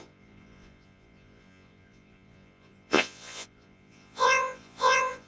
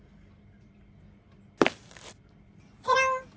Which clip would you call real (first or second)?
second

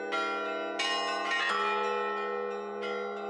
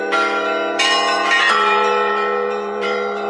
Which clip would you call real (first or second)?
first